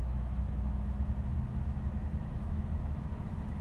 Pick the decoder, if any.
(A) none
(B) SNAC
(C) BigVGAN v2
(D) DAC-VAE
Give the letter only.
D